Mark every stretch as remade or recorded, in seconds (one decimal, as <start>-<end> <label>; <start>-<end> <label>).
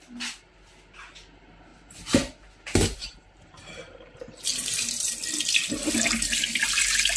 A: 0.0-1.7 recorded; 1.7-2.5 remade; 2.5-3.0 recorded; 3.0-3.7 remade; 3.7-4.5 recorded; 4.5-5.1 remade; 5.1-7.2 recorded